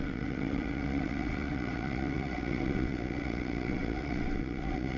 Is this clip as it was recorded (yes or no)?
no